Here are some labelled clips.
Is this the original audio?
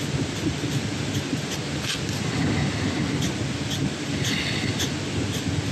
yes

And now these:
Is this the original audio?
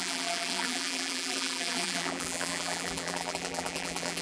no